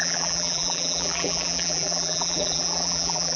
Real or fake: fake